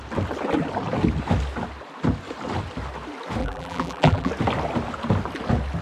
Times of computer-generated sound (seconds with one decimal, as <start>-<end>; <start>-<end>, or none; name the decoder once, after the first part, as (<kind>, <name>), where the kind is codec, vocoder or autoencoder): 3.4-4.3 (vocoder, BigVGAN v2)